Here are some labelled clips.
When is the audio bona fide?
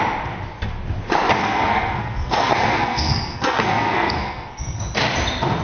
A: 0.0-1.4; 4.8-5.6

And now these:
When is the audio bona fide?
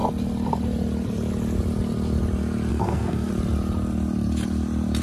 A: 0.0-2.7; 3.3-5.0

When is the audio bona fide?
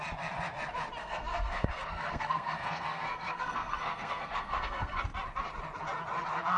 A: 0.0-1.0; 5.0-6.6